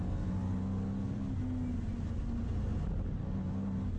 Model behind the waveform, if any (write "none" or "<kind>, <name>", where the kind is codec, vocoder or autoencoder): none